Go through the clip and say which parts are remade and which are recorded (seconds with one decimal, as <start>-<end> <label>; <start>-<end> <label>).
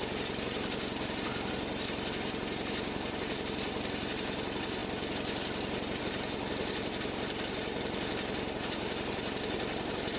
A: 0.0-4.8 remade; 4.8-6.0 recorded; 6.0-10.2 remade